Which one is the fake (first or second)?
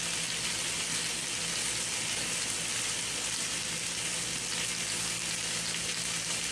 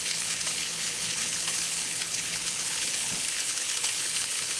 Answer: second